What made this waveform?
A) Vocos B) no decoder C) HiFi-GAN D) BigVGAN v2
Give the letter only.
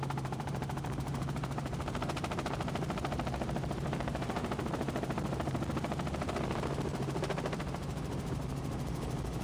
D